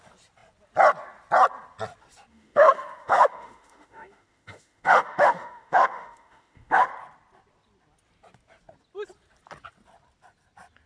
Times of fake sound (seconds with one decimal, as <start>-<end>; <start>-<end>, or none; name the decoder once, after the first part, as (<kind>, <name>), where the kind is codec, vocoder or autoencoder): 2.3-6.9 (autoencoder, DAC-VAE)